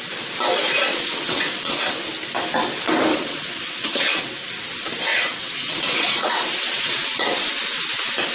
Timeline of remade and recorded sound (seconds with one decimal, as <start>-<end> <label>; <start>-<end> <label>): 0.0-0.9 recorded; 0.9-1.8 remade; 1.8-3.1 recorded; 3.1-4.3 remade; 4.3-5.1 recorded; 5.1-6.3 remade; 6.3-6.7 recorded; 6.7-7.5 remade; 7.5-8.3 recorded